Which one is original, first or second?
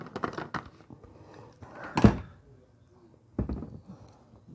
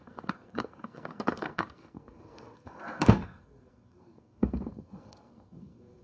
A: first